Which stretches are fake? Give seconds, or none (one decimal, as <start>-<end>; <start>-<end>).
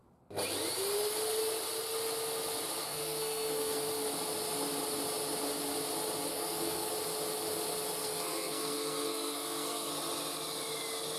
2.8-3.9; 6.3-6.9; 8.0-9.9